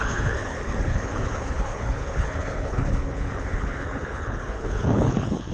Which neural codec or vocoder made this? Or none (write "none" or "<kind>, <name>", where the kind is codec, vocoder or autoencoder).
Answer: codec, HILCodec